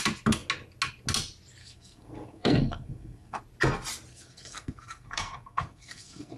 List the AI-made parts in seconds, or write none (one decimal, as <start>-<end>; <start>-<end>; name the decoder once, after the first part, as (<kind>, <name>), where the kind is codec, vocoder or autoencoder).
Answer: 1.6-3.4 (codec, SNAC); 4.1-6.4